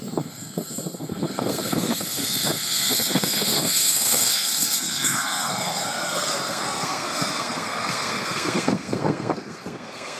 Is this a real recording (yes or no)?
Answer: no